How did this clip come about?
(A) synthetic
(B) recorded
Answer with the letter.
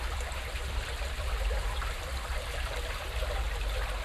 A